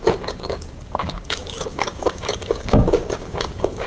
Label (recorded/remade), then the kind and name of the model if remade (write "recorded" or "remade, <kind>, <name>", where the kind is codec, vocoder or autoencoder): remade, codec, DAC